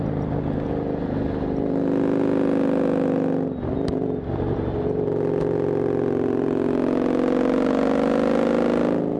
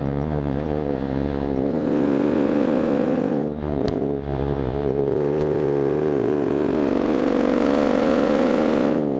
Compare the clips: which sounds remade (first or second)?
second